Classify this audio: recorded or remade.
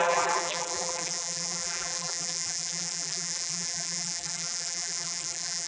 remade